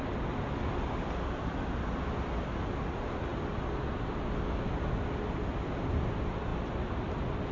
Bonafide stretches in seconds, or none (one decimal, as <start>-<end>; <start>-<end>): 0.0-7.5